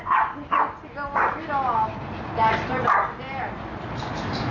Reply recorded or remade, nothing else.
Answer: recorded